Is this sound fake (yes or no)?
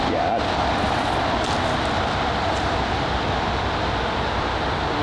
no